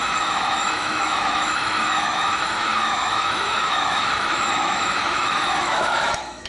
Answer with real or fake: fake